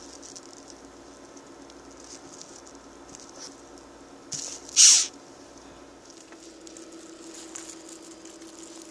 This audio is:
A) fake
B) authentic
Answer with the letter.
B